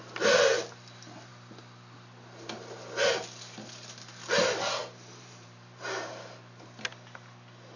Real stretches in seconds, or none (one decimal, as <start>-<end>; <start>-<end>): 0.0-4.8; 6.1-7.8